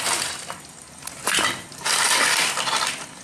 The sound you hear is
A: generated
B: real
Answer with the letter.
B